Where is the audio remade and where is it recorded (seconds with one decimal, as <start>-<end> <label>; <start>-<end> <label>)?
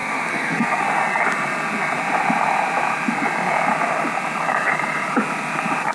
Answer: 0.0-0.8 remade; 0.8-5.9 recorded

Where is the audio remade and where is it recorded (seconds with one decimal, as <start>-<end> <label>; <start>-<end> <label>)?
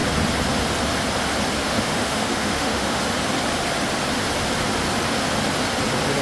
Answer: 0.0-1.6 recorded; 1.6-3.0 remade; 3.0-6.2 recorded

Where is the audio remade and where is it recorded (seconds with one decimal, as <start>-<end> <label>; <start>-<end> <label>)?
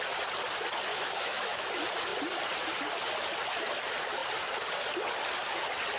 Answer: 0.0-0.9 recorded; 0.9-1.7 remade; 1.7-6.0 recorded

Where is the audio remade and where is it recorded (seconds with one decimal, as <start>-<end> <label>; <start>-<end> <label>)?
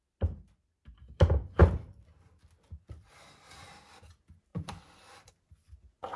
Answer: 0.0-1.6 recorded; 1.6-2.6 remade; 2.6-4.5 recorded; 4.5-5.3 remade; 5.3-6.2 recorded